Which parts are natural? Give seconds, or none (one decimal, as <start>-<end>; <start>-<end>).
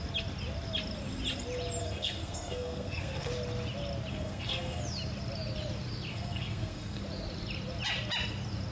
0.0-1.8; 3.3-4.1; 4.8-6.1; 7.0-8.7